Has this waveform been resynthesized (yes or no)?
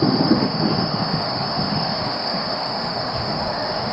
yes